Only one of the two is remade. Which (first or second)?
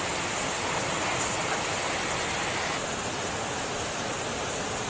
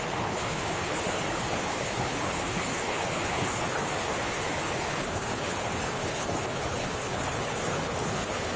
second